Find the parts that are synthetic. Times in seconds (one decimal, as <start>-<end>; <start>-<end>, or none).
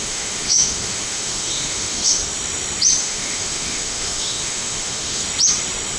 0.0-2.2; 3.0-5.2